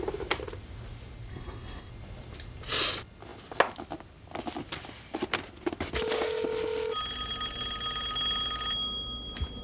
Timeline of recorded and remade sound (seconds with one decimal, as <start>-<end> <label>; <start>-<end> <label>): 0.0-1.3 recorded; 1.3-1.9 remade; 1.9-9.6 recorded